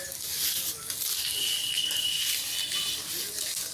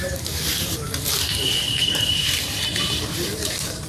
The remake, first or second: second